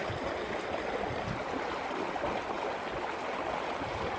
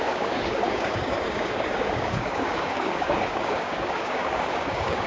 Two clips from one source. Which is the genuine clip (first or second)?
first